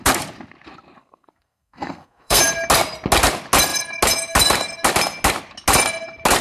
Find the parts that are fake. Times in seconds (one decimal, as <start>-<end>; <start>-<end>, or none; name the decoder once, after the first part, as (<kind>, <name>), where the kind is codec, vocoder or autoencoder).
1.0-2.4 (codec, SNAC)